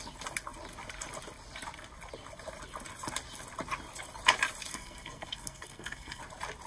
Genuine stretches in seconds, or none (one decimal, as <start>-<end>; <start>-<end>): 0.0-4.7; 6.2-6.7